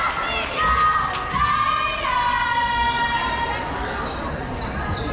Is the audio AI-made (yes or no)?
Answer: no